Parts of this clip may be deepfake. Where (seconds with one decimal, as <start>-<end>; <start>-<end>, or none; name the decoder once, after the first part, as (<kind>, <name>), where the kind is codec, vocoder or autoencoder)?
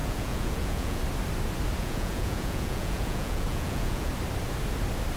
0.0-1.0 (vocoder, Vocos); 1.8-4.1